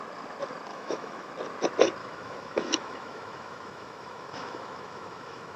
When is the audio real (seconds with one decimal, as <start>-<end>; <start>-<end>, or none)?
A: 0.0-0.7; 1.3-2.0